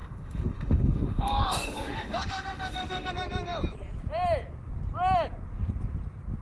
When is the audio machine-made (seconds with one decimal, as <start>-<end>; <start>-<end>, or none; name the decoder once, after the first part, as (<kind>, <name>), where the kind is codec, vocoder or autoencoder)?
0.0-3.1 (autoencoder, DAC-VAE)